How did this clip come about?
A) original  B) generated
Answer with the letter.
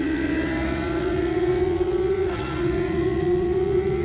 B